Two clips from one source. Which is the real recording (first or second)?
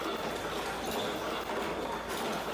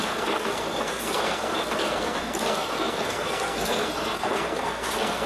first